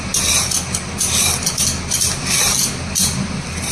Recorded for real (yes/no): yes